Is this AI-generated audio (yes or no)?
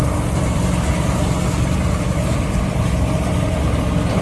no